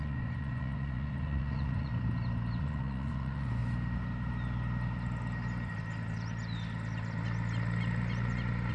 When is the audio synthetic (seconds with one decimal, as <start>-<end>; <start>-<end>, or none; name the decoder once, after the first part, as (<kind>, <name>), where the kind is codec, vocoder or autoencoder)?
0.0-1.9 (vocoder, Vocos); 2.6-3.6